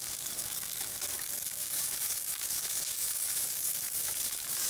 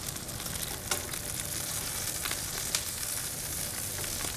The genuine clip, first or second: second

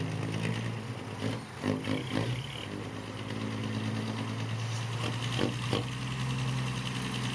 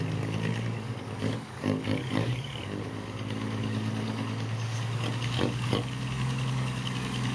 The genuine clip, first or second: first